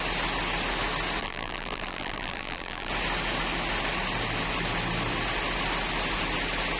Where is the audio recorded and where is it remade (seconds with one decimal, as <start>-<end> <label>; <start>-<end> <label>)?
0.0-1.2 recorded; 1.2-2.9 remade; 2.9-6.8 recorded